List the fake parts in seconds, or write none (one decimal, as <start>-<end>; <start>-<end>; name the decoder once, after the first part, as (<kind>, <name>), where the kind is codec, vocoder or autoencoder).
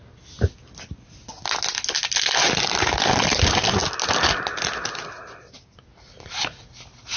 none